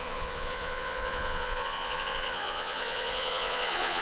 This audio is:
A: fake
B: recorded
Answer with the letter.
A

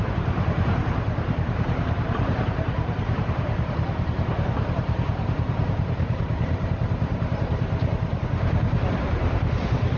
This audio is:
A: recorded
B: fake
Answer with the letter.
B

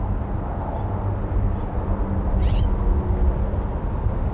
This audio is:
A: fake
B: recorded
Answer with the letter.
B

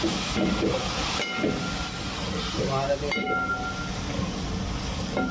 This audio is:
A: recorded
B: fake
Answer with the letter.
A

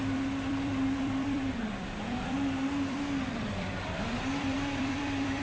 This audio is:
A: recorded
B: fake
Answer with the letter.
B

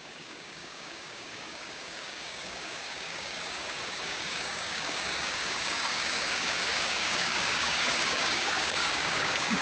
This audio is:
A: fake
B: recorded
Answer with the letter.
A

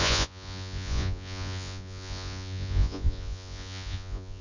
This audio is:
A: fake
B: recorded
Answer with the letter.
A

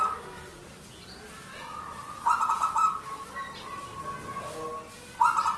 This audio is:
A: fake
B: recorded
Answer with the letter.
B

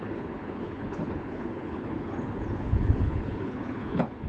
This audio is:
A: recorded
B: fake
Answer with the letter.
B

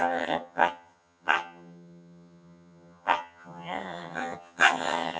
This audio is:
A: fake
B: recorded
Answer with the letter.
A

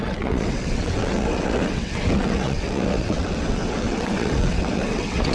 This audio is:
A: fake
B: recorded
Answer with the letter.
A